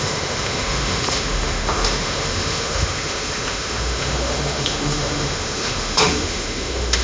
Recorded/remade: remade